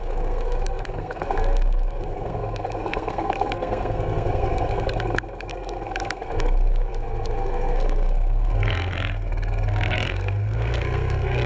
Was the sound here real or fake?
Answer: fake